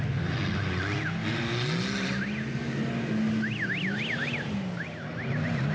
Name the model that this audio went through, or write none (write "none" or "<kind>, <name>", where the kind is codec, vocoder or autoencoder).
none